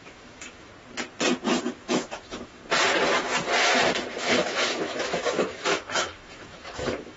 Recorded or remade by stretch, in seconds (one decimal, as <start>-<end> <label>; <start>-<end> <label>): 0.0-0.7 remade; 0.7-1.6 recorded; 1.6-2.6 remade; 2.6-4.2 recorded; 4.2-7.2 remade